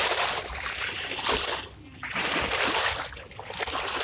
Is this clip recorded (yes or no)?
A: yes